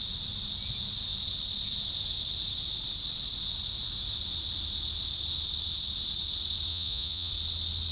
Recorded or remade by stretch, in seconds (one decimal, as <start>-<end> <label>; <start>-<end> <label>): 0.0-6.7 recorded; 6.7-7.3 remade; 7.3-7.9 recorded